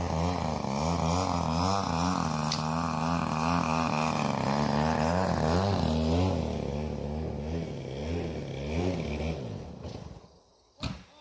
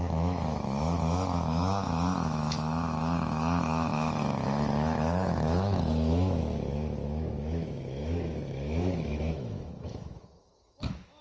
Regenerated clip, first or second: second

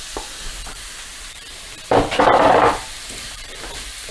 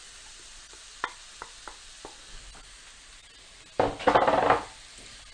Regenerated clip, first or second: first